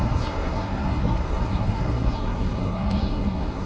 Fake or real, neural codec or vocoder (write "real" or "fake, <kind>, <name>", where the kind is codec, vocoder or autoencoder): fake, codec, SNAC